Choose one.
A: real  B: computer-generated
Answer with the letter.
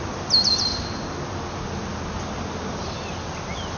A